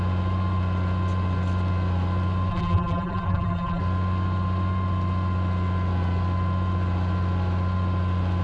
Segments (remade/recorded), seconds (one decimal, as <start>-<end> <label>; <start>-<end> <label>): 0.0-2.5 recorded; 2.5-3.8 remade; 3.8-8.4 recorded